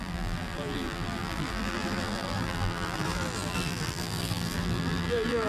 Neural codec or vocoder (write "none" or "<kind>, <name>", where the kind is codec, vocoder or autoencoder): vocoder, BigVGAN v2